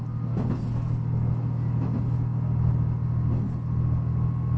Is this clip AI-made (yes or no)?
no